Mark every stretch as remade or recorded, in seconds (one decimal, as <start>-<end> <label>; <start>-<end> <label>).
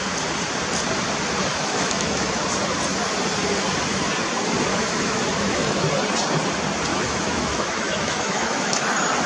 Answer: 0.0-1.5 recorded; 1.5-2.4 remade; 2.4-4.7 recorded; 4.7-5.9 remade; 5.9-6.9 recorded; 6.9-8.9 remade; 8.9-9.3 recorded